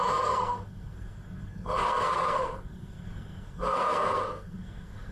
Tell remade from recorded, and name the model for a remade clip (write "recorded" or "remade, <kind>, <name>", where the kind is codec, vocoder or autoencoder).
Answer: remade, codec, SNAC